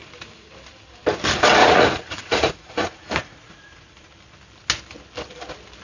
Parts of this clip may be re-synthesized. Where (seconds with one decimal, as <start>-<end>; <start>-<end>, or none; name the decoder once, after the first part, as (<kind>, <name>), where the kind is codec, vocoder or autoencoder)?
1.6-4.1 (vocoder, Vocos)